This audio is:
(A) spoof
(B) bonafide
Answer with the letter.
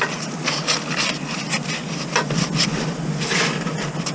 B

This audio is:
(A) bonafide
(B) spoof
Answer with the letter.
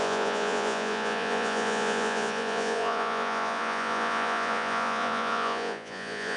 B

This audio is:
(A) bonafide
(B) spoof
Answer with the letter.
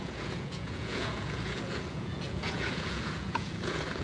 B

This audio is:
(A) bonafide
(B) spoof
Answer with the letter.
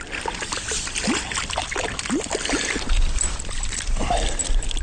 A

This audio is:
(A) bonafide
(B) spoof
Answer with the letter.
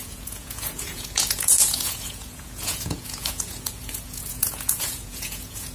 B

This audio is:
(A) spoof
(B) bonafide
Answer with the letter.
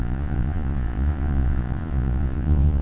A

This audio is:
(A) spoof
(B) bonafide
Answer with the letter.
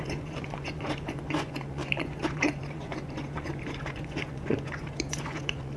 A